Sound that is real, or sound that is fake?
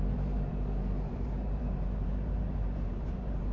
fake